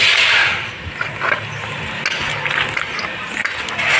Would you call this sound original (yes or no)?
yes